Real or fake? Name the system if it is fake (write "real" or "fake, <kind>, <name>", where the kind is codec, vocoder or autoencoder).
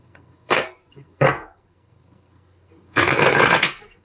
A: fake, codec, SNAC